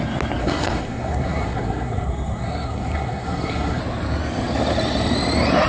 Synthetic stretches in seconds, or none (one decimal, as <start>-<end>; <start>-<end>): 0.4-3.8